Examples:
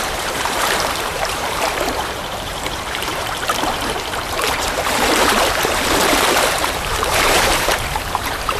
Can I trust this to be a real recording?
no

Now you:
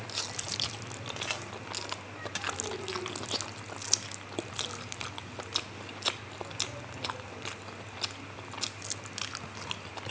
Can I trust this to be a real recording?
yes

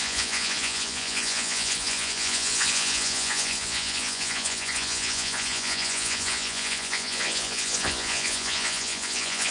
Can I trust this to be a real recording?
no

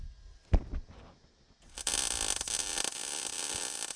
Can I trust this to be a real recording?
yes